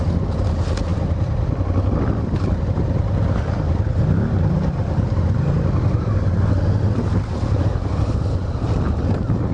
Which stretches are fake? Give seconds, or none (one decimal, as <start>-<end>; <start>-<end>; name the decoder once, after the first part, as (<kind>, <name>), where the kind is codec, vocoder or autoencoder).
none